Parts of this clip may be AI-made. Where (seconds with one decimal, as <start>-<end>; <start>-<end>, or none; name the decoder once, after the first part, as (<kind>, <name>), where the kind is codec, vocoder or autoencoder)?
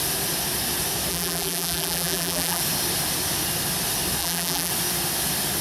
1.1-2.6 (vocoder, BigVGAN v2); 4.2-4.7